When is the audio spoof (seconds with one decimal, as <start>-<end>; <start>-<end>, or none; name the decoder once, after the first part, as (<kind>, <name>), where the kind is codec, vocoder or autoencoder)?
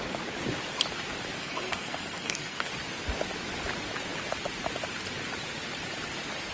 1.4-2.7 (codec, SNAC)